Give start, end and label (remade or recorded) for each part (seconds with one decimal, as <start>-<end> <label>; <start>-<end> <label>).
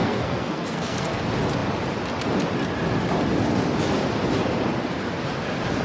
0.0-1.2 remade; 1.2-5.8 recorded